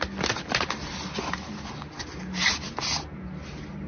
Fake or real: real